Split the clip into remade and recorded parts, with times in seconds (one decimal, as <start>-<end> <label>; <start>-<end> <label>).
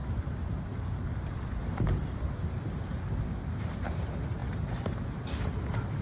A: 0.0-6.0 recorded